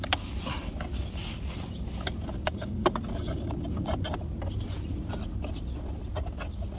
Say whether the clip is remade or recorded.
recorded